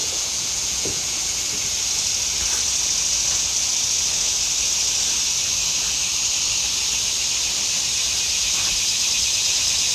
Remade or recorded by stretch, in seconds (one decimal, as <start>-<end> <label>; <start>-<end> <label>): 0.0-1.4 remade; 1.4-9.9 recorded